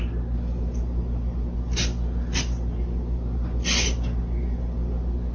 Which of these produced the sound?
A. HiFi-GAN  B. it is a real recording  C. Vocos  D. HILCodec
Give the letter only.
B